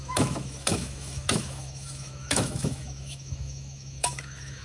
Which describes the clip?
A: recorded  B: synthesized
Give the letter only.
B